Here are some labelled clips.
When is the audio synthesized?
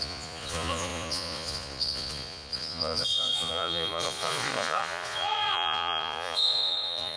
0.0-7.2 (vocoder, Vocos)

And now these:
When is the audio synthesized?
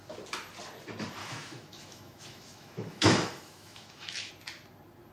1.2-4.3 (autoencoder, DAC-VAE)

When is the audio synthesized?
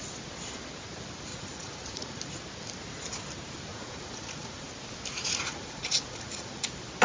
1.3-2.2 (vocoder, Vocos); 3.7-4.7; 5.2-6.6